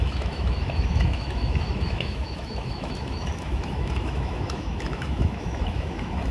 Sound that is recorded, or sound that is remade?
remade